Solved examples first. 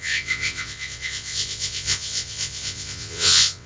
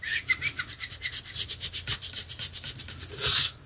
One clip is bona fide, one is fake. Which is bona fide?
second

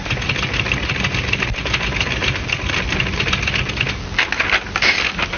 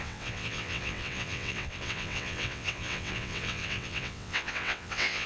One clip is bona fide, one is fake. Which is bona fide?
first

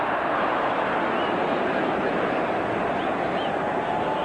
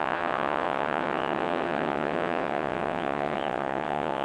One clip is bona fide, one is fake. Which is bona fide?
first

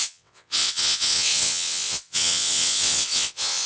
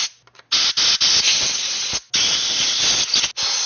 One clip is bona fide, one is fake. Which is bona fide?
second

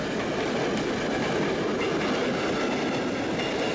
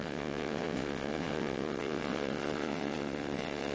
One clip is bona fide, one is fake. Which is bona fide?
first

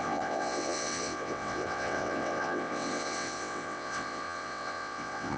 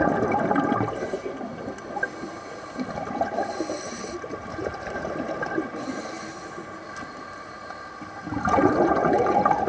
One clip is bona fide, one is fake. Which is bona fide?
second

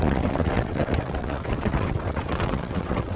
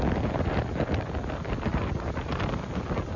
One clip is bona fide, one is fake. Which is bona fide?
second